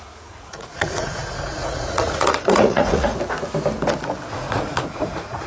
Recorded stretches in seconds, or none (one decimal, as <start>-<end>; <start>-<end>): 3.1-4.3